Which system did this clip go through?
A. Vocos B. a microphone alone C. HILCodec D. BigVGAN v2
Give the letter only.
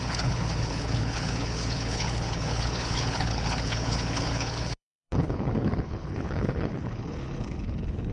C